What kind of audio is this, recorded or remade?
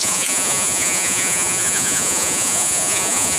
remade